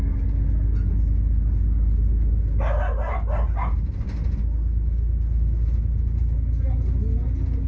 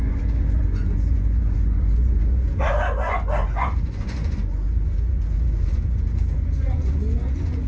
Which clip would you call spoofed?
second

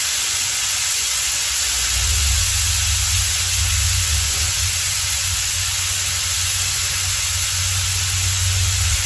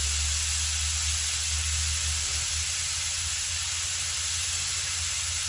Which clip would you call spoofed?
first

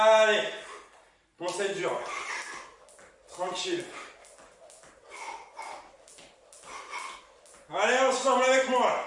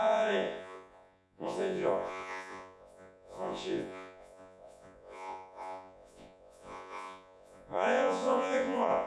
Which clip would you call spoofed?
second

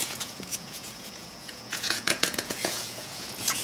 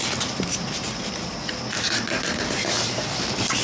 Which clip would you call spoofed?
first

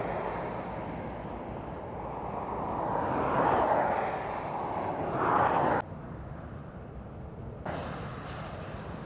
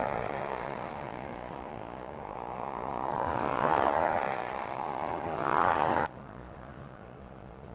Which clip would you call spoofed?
second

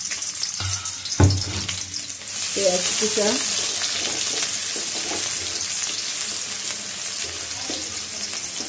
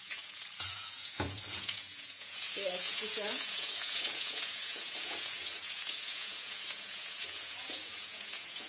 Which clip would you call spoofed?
second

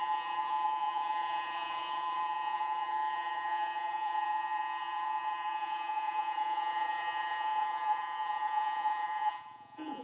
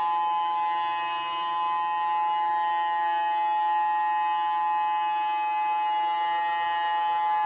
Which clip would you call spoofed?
first